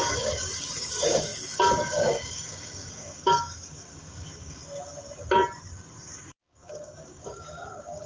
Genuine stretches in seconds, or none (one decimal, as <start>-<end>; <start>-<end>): 4.6-6.3